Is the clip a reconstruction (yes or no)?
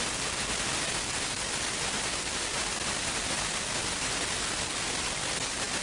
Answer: no